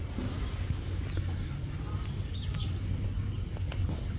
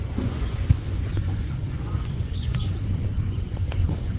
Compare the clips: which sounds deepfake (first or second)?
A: second